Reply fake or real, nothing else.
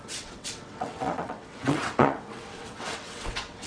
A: fake